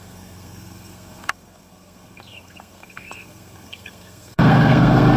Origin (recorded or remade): remade